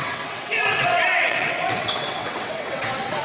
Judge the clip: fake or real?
fake